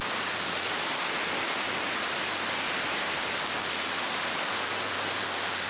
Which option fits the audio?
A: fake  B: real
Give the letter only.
B